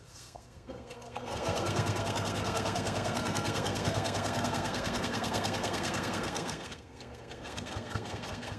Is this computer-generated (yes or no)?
yes